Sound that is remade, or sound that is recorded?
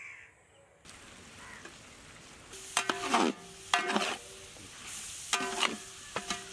recorded